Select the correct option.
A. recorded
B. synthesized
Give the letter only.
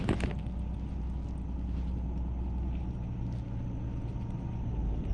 A